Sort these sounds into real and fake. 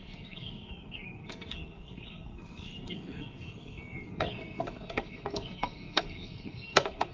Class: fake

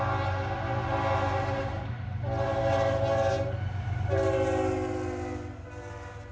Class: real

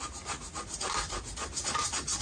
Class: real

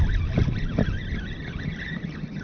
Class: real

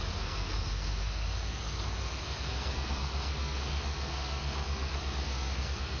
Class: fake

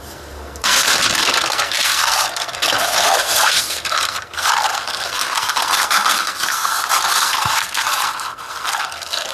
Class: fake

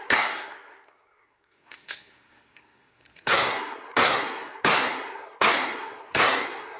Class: fake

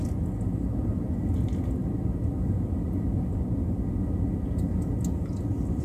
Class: real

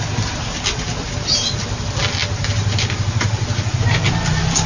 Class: real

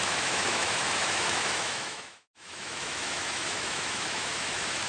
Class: fake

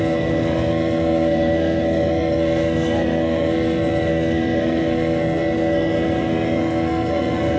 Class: fake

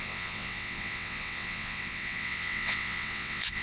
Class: fake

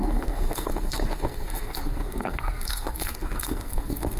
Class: fake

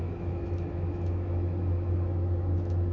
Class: fake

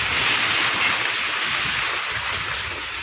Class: real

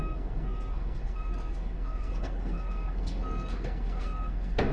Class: fake